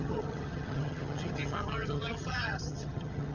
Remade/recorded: remade